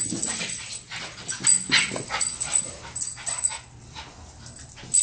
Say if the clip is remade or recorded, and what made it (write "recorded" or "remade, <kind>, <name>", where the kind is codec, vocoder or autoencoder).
recorded